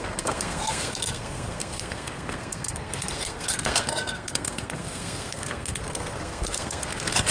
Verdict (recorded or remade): remade